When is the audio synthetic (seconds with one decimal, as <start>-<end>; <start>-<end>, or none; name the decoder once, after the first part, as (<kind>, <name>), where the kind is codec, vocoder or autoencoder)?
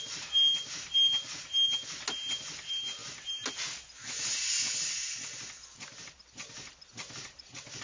none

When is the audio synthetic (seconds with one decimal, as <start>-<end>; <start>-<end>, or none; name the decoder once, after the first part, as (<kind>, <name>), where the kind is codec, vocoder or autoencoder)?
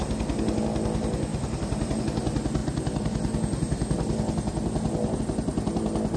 1.3-2.0 (vocoder, BigVGAN v2)